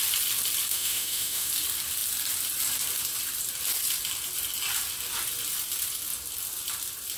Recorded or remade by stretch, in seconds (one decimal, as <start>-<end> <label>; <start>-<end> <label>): 0.0-0.7 recorded; 0.7-1.5 remade; 1.5-7.2 recorded